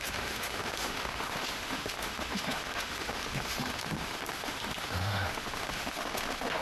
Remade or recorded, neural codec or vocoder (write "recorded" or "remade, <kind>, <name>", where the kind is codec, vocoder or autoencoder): remade, autoencoder, DAC-VAE